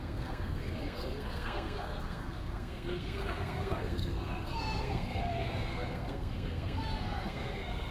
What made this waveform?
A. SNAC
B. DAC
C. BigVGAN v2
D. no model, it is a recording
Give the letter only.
A